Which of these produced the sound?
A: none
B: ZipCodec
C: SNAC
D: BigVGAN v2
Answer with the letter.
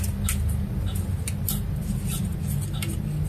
A